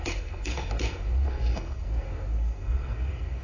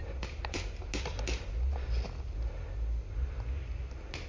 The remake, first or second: first